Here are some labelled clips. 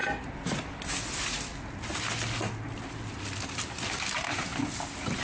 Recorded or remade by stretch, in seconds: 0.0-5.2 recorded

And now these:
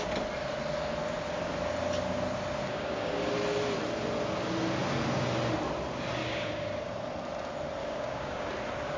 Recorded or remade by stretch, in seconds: 0.0-2.6 recorded; 2.6-3.2 remade; 3.2-6.2 recorded; 6.2-6.9 remade; 6.9-7.8 recorded; 7.8-8.5 remade; 8.5-9.0 recorded

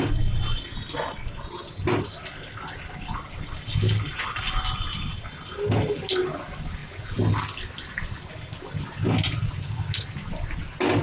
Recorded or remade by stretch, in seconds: 0.0-11.0 recorded

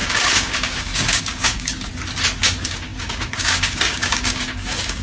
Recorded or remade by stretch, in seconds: 0.0-1.9 remade; 1.9-2.4 recorded; 2.4-5.0 remade

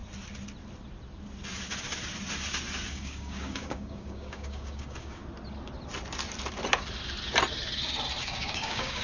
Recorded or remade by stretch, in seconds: 0.0-2.9 recorded; 2.9-5.2 remade; 5.2-8.2 recorded; 8.2-9.0 remade

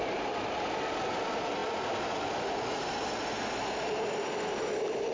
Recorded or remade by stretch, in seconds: 0.0-5.1 recorded

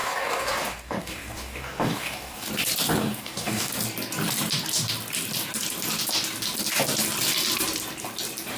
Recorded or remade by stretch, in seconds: 0.0-2.5 remade; 2.5-3.0 recorded; 3.0-3.7 remade; 3.7-8.6 recorded

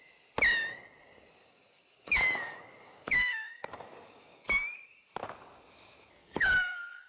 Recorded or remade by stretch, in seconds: 0.0-1.4 recorded; 1.4-5.1 remade; 5.1-6.2 recorded; 6.2-7.1 remade